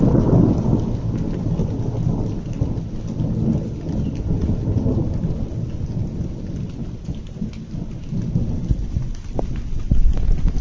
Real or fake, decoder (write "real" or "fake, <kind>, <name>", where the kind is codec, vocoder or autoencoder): real